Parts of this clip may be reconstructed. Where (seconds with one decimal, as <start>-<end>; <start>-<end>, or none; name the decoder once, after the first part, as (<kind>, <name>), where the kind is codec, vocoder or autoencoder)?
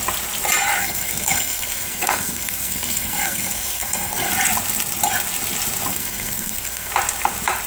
0.8-4.3 (codec, SNAC); 5.9-6.9